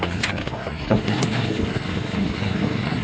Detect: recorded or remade remade